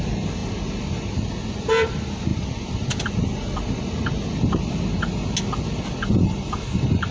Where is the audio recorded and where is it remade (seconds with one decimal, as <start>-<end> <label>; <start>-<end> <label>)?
0.0-7.1 recorded